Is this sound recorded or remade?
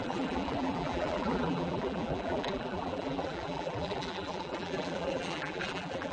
remade